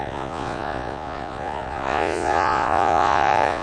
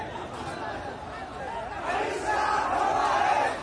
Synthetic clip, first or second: first